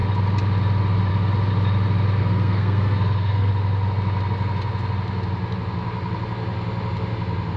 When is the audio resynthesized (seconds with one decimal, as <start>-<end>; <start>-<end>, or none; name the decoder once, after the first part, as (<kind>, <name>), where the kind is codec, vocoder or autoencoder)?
2.2-3.5 (codec, SNAC)